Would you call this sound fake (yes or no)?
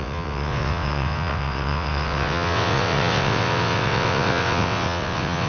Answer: yes